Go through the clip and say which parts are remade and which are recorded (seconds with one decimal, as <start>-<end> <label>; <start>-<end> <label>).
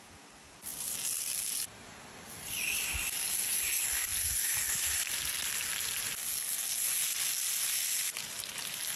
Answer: 0.0-9.0 recorded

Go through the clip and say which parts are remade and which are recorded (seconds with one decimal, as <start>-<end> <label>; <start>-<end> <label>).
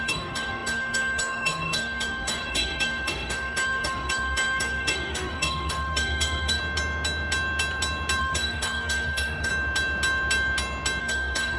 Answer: 0.0-6.6 remade; 6.6-8.2 recorded; 8.2-9.5 remade; 9.5-11.0 recorded; 11.0-11.6 remade